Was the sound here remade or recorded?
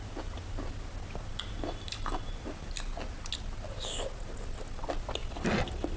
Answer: recorded